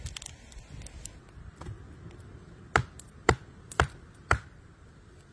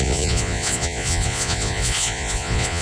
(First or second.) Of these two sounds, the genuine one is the first